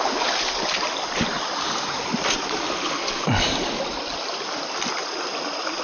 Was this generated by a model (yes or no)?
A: no